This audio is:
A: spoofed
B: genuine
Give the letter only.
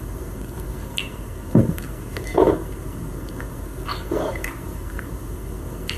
A